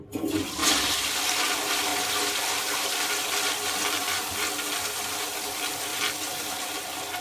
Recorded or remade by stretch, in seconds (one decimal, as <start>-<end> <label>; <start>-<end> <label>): 0.0-1.9 recorded; 1.9-3.1 remade; 3.1-5.9 recorded; 5.9-6.8 remade; 6.8-7.2 recorded